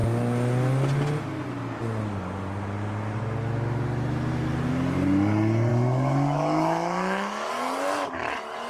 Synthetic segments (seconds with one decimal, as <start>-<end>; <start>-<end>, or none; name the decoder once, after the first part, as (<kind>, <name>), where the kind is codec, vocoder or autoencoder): 5.7-7.5 (autoencoder, DAC-VAE)